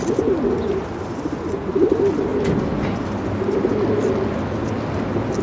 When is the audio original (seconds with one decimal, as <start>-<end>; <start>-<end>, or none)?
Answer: 0.0-5.4